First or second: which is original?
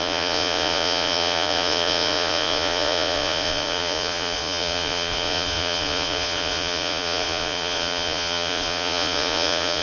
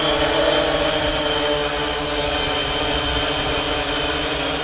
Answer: second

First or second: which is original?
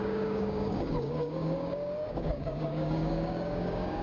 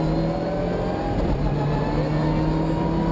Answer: second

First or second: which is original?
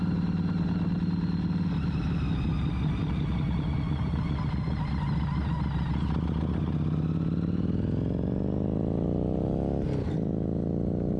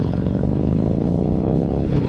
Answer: first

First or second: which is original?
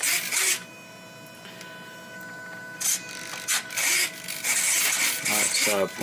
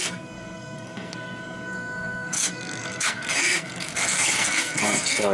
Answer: first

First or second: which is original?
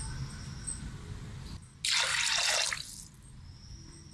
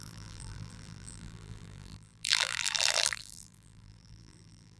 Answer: first